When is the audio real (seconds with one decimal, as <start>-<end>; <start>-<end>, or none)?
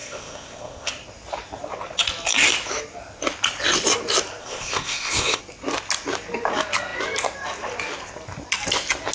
0.9-4.4; 5.4-9.1